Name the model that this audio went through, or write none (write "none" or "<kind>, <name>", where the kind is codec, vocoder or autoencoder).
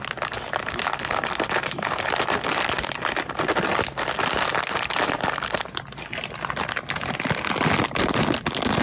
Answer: none